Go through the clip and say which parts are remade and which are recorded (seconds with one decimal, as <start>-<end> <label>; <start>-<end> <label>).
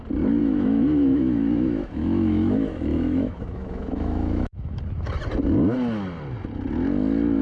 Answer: 0.0-0.4 recorded; 0.4-4.8 remade; 4.8-7.4 recorded